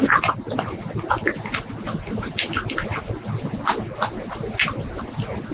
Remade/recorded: recorded